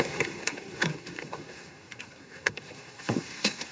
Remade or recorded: remade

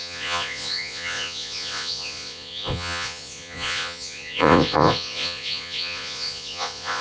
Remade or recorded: remade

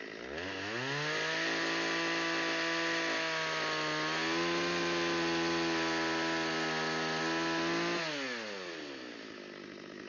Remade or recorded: recorded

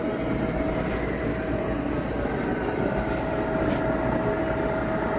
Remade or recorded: recorded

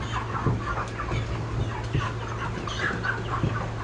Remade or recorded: recorded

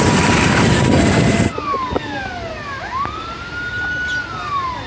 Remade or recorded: recorded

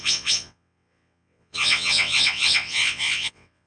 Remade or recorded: remade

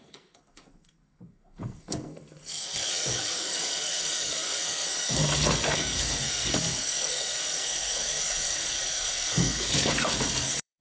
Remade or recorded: remade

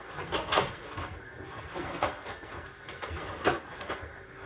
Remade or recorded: remade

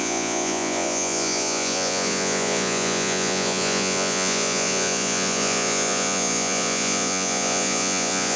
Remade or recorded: remade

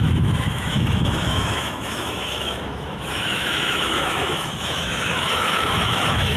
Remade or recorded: remade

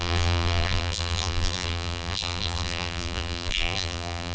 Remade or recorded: remade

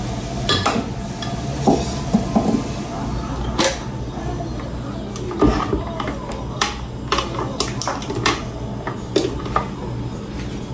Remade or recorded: recorded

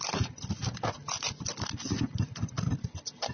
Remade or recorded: recorded